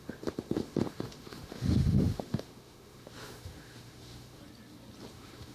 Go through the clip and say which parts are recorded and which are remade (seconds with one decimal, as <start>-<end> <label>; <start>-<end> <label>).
0.0-4.4 remade; 4.4-5.1 recorded; 5.1-5.5 remade